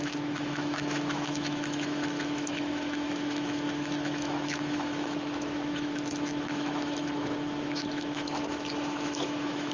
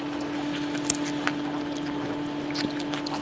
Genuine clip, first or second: second